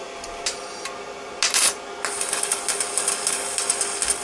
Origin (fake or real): real